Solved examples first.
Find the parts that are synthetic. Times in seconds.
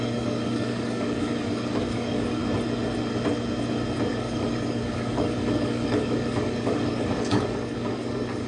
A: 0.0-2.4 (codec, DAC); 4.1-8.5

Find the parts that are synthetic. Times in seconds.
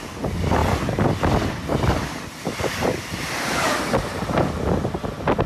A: none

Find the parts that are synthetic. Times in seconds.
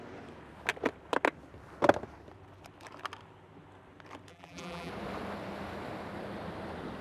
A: 4.3-4.9 (vocoder, BigVGAN v2)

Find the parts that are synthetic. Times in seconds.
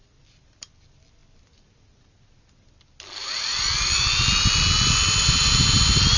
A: none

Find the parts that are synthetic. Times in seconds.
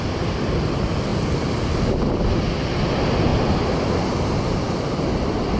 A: none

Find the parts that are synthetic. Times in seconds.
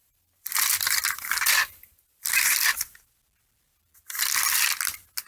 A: 0.0-3.2 (vocoder, BigVGAN v2)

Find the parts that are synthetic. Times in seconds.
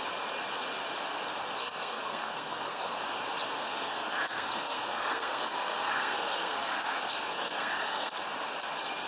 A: 1.6-3.0 (codec, SNAC); 3.6-8.1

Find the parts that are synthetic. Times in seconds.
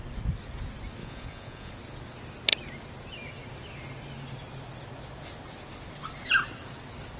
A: 1.0-1.7 (vocoder, Vocos)